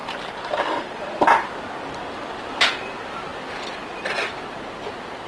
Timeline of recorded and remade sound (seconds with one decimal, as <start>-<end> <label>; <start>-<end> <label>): 0.0-1.5 remade; 1.5-5.3 recorded

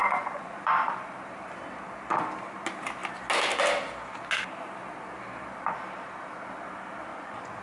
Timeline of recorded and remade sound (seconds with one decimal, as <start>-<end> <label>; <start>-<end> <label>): 0.0-0.7 remade; 0.7-7.1 recorded; 7.1-7.6 remade

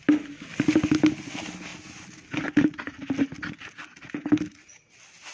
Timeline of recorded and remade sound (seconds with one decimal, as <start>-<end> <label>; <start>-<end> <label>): 0.0-5.3 recorded